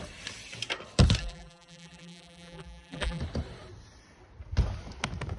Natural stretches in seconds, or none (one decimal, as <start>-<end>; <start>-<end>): 0.0-1.2; 3.2-5.4